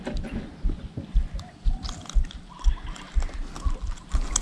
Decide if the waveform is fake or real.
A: real